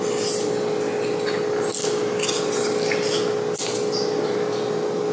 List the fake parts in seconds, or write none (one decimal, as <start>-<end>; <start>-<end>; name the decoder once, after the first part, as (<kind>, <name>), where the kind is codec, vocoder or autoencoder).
none